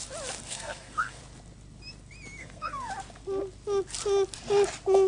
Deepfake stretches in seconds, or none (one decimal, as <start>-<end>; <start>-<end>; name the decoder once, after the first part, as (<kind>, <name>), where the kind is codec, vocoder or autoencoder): 0.5-1.2 (codec, SNAC); 2.4-2.9